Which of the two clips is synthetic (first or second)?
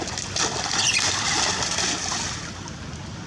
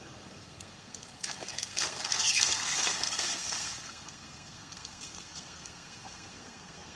second